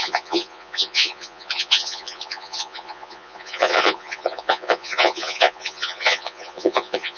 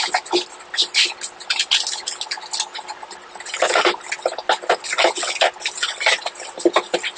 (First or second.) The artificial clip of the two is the first